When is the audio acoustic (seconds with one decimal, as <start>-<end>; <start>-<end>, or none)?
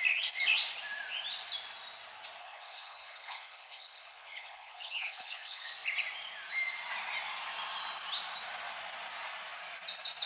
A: 0.0-2.4; 5.7-10.3